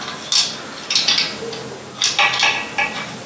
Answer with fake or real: real